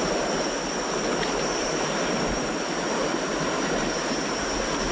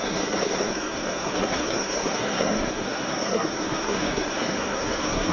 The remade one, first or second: second